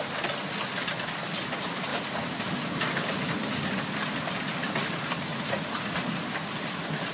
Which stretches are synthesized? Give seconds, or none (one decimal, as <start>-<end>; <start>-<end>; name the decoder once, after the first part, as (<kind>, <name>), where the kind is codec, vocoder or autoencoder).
5.3-5.9 (vocoder, Vocos)